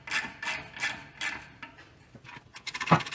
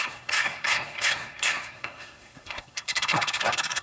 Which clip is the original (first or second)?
first